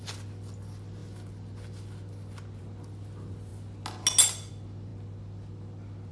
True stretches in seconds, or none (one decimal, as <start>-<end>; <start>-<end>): 0.0-6.1